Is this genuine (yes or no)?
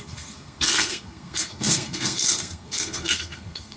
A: no